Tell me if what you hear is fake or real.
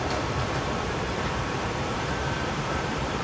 fake